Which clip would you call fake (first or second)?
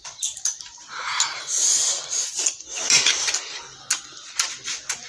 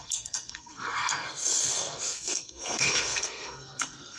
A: second